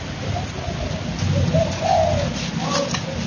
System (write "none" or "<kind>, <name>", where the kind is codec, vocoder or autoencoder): none